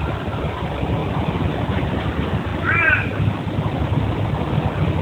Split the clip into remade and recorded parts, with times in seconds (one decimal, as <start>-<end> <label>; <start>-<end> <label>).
0.0-1.0 remade; 1.0-2.0 recorded; 2.0-2.5 remade; 2.5-4.6 recorded; 4.6-5.0 remade